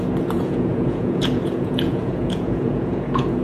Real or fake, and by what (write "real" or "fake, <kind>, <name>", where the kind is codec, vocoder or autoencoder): fake, vocoder, Vocos